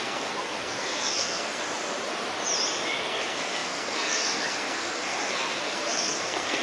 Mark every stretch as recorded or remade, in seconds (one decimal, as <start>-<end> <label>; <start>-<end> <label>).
0.0-1.6 remade; 1.6-3.0 recorded; 3.0-6.6 remade

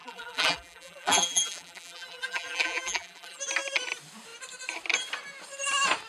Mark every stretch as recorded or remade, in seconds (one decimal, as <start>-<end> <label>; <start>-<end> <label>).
0.0-3.4 remade; 3.4-6.1 recorded

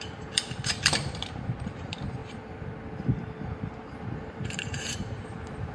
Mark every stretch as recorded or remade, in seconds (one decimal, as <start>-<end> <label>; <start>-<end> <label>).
0.0-2.2 remade; 2.2-4.0 recorded; 4.0-5.7 remade

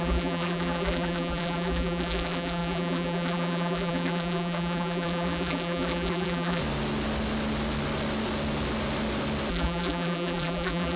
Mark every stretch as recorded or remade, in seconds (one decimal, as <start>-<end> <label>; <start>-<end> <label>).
0.0-6.6 remade; 6.6-9.5 recorded; 9.5-11.0 remade

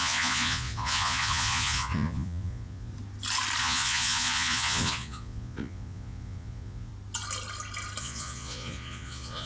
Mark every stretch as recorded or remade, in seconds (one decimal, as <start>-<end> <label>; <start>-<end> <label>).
0.0-2.9 remade; 2.9-3.6 recorded; 3.6-6.9 remade; 6.9-8.0 recorded; 8.0-9.5 remade

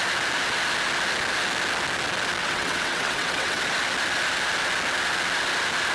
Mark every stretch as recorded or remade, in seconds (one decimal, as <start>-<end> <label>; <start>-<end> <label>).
0.0-2.4 recorded; 2.4-3.6 remade; 3.6-5.9 recorded

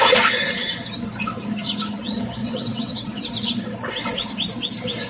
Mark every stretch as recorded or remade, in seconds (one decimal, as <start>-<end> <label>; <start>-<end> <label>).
0.0-2.4 recorded; 2.4-3.2 remade; 3.2-5.1 recorded

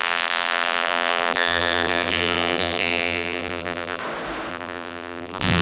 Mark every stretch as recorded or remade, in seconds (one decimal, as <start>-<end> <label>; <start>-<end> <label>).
0.0-4.0 remade; 4.0-4.5 recorded; 4.5-5.6 remade